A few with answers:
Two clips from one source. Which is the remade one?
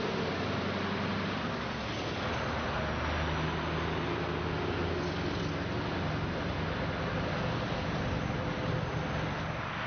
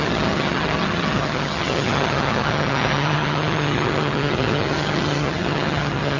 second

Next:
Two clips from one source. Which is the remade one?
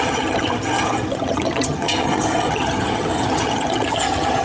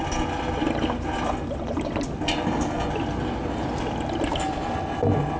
first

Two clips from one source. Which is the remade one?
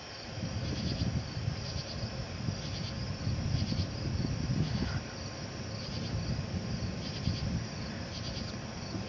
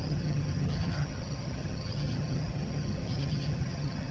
second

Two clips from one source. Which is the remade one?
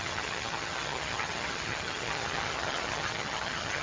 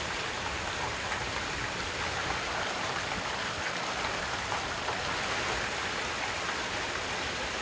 first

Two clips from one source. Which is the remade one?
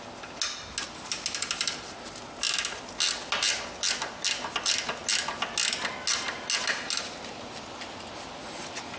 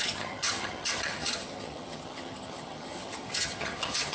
second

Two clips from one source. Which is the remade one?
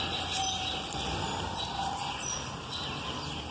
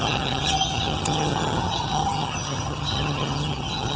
second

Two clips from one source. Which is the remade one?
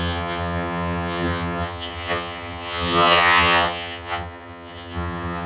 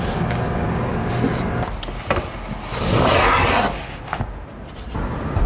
first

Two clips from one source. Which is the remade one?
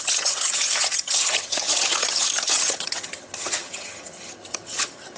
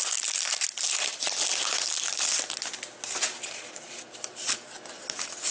first